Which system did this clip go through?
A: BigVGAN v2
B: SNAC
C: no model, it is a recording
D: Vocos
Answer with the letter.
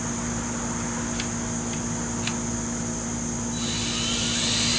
C